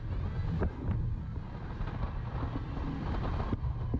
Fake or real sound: real